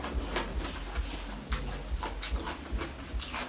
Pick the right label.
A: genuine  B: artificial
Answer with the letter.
A